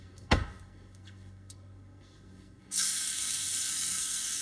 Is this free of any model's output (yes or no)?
no